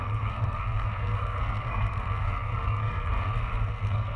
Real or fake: fake